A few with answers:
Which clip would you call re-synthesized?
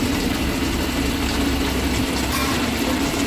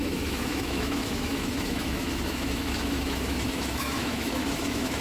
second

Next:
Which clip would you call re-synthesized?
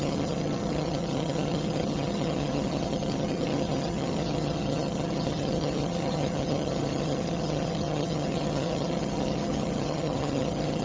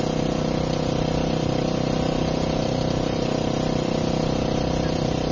first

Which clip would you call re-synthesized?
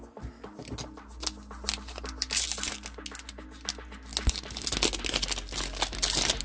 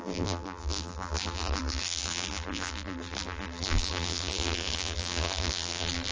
second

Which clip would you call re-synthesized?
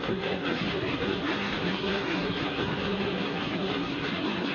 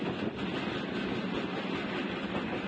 first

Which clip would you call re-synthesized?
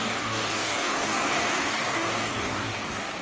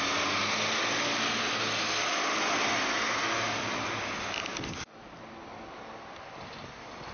first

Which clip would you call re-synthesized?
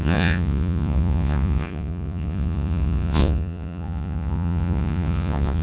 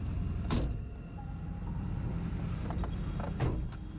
first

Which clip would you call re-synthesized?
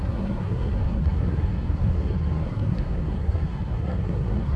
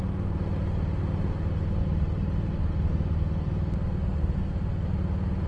first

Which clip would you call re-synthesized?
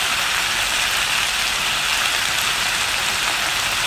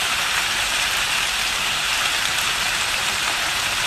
second